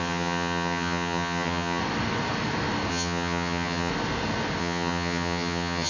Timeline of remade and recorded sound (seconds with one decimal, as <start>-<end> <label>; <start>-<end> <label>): 0.0-1.8 remade; 1.8-2.9 recorded; 2.9-3.9 remade; 3.9-4.6 recorded; 4.6-5.9 remade